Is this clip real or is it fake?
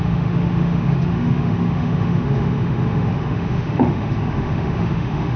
fake